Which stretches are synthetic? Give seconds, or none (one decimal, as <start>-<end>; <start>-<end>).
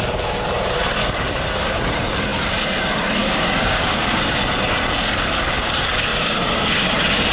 1.0-1.8; 3.2-4.4; 6.1-6.8